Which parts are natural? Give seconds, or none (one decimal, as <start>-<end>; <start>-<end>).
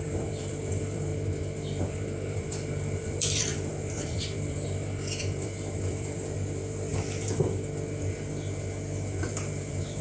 1.1-1.8; 6.9-9.2